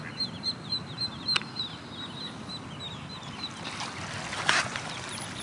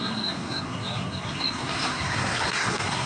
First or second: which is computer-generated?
second